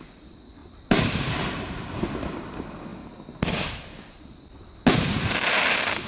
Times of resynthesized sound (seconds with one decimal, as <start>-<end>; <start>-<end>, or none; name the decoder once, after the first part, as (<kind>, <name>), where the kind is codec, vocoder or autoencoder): none